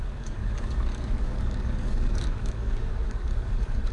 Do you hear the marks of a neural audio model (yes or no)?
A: yes